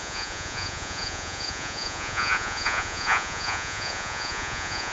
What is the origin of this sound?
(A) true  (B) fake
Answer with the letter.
B